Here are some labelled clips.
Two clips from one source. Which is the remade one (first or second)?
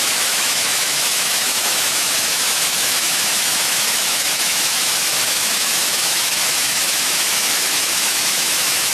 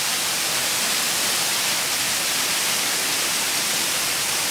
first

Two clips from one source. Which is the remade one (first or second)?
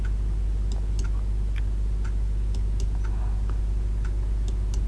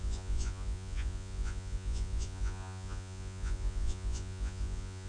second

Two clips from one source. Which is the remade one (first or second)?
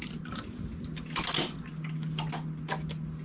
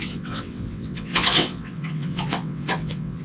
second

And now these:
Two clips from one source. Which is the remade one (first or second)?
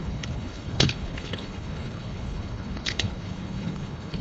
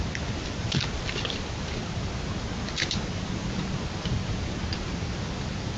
first